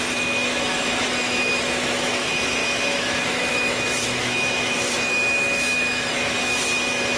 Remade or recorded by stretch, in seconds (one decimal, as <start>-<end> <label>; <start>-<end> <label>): 0.0-7.2 remade

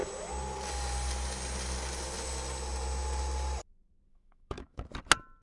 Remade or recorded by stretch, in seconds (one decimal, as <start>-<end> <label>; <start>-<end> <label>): 0.0-4.1 recorded; 4.1-4.8 remade; 4.8-5.4 recorded

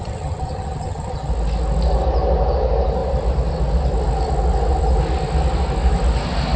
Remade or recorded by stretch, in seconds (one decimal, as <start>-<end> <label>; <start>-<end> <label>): 0.0-1.3 remade; 1.3-6.6 recorded

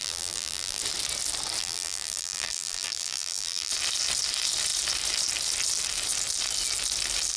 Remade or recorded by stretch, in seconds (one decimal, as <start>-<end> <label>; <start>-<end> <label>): 0.0-0.8 remade; 0.8-1.6 recorded; 1.6-3.7 remade; 3.7-7.4 recorded

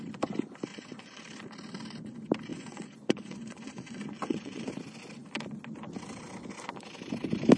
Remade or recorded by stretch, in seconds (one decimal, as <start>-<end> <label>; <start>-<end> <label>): 0.0-0.7 recorded; 0.7-1.2 remade; 1.2-2.5 recorded; 2.5-4.7 remade; 4.7-7.6 recorded